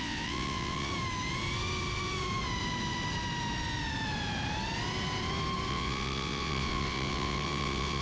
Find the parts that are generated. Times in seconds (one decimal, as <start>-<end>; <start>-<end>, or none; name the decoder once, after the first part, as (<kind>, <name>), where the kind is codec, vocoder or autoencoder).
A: 0.0-0.9 (vocoder, WaveNeXt); 5.7-8.0